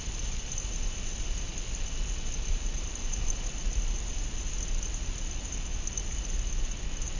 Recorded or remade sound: recorded